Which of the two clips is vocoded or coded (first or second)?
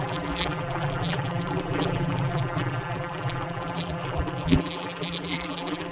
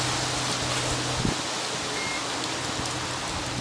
first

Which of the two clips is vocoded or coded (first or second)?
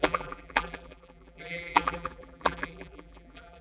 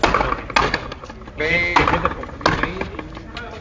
first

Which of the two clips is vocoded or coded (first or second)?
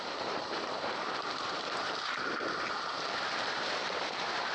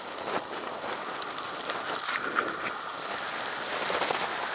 first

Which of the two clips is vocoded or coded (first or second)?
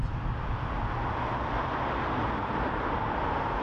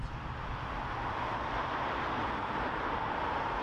second